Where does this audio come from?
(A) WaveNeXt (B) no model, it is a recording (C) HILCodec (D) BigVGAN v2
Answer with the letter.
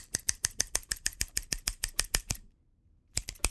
D